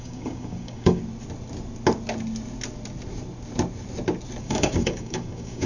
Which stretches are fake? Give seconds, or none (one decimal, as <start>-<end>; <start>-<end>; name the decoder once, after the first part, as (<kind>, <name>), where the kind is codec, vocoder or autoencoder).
0.0-1.0 (codec, DAC); 4.4-5.7